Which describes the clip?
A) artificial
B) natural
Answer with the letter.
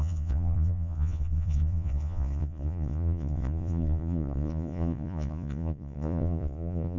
A